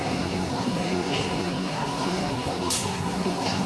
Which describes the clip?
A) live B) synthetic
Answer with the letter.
B